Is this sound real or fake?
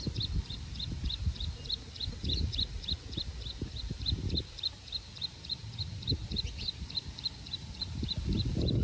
real